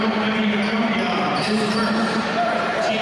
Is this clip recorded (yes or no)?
no